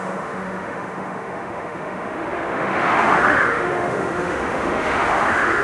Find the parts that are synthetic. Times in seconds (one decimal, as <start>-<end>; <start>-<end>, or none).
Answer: 0.0-5.6

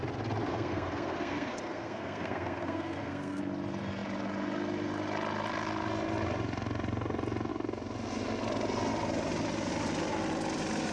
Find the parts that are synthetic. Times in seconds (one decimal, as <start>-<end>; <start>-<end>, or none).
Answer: 0.5-3.4

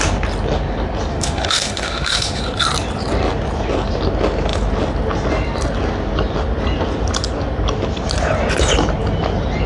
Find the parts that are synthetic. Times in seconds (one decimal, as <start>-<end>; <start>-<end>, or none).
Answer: 1.1-2.4

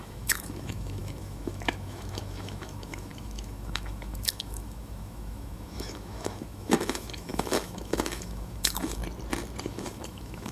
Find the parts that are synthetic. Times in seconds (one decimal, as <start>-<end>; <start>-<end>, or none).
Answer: 0.0-9.0; 9.6-10.5

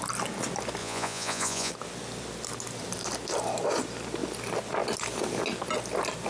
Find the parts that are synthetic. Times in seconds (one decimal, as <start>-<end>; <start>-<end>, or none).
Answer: 0.8-1.7

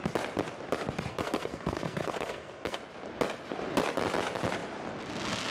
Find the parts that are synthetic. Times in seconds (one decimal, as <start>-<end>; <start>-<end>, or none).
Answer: 1.1-2.8